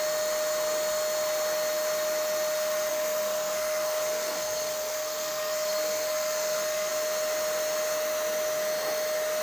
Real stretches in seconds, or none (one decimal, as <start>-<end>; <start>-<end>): 0.0-2.9; 6.9-9.4

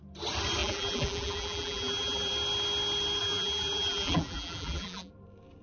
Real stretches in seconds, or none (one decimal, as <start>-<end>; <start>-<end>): 0.0-0.6; 2.3-3.2; 5.1-5.6

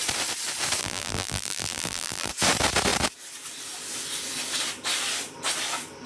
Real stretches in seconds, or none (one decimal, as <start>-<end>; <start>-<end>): 0.0-0.8; 2.3-6.1

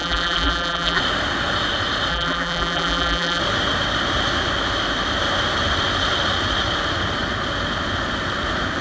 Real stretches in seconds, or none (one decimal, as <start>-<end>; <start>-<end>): 1.0-2.1; 3.4-8.8

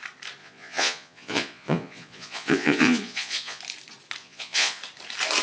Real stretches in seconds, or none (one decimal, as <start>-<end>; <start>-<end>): 0.0-0.4; 3.6-4.2; 4.8-5.4